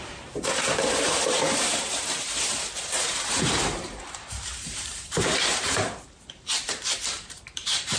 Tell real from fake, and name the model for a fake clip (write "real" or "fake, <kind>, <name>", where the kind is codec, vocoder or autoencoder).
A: fake, vocoder, BigVGAN v2